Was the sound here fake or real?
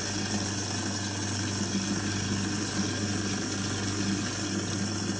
real